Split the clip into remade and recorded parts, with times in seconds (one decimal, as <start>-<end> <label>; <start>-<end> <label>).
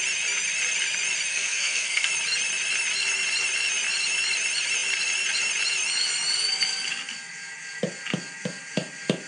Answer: 0.0-1.3 recorded; 1.3-2.1 remade; 2.1-9.3 recorded